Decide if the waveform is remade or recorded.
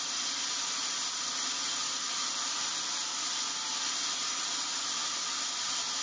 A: recorded